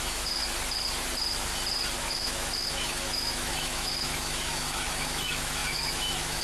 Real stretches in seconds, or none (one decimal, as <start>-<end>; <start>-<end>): 0.4-2.0